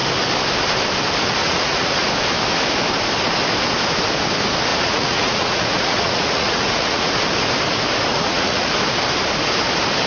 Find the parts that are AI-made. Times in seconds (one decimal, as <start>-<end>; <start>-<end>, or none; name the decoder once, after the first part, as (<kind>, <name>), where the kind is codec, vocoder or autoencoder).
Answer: 1.4-2.1 (vocoder, Vocos); 4.7-7.1; 8.1-8.7